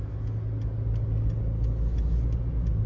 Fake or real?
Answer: real